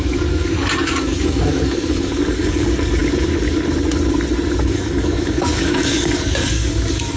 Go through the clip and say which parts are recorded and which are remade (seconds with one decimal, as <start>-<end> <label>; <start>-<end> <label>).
0.0-3.0 remade; 3.0-4.6 recorded; 4.6-7.2 remade